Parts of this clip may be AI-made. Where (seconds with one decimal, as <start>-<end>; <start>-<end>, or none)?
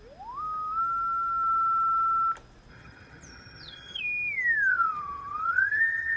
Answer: 2.7-4.0; 4.7-6.2